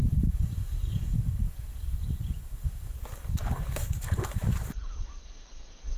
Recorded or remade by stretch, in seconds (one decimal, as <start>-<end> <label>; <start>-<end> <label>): 0.0-6.0 remade